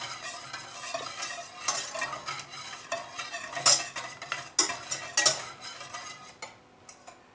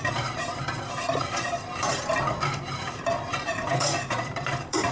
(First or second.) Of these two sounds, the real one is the first